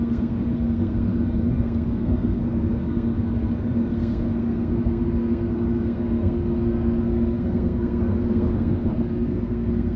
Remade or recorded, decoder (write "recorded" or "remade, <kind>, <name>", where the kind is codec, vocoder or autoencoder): remade, codec, SNAC